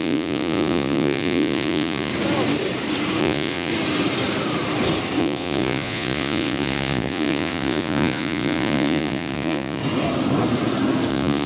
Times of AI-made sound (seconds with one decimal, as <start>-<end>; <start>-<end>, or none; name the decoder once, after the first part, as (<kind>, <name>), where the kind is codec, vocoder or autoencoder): 0.0-2.1 (vocoder, Vocos); 3.2-3.7; 5.2-9.8; 11.1-11.5